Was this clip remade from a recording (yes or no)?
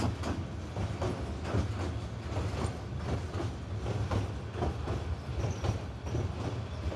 no